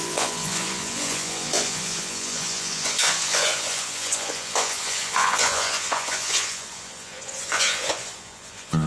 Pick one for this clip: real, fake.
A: fake